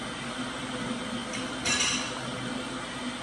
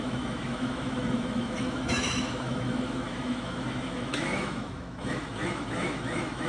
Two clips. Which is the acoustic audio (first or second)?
first